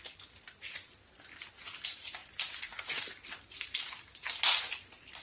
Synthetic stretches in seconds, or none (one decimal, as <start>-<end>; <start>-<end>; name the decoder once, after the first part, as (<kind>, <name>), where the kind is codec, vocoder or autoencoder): none